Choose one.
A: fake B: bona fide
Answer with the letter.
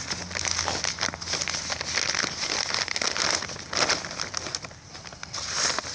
B